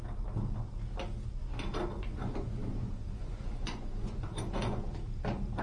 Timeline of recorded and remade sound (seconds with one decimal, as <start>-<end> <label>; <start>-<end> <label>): 0.0-1.9 recorded; 1.9-4.8 remade; 4.8-5.6 recorded